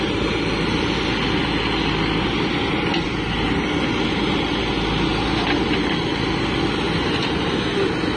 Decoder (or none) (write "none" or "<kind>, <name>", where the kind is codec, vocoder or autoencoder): none